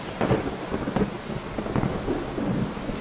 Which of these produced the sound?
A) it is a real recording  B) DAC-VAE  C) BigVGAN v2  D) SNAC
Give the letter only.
A